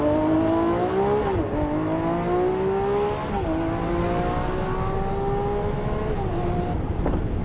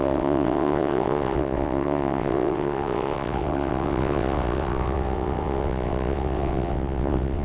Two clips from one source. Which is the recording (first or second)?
first